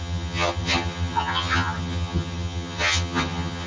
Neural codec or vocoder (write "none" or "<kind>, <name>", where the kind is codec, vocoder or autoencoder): vocoder, HiFi-GAN